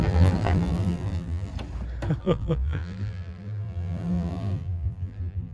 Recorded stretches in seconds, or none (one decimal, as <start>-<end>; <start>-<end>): 1.5-2.2